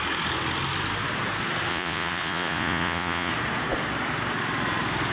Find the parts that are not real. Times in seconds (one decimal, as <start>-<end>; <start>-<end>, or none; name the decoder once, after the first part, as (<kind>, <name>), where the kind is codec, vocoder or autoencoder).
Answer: 1.7-3.3 (vocoder, Vocos)